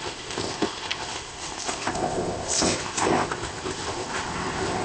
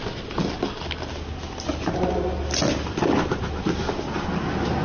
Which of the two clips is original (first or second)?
second